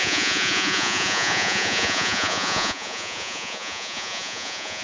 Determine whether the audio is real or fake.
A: fake